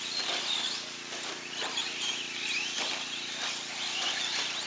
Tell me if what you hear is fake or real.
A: real